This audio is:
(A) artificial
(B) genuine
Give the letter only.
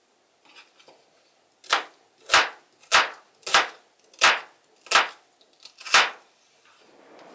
B